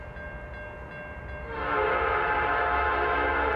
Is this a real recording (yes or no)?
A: yes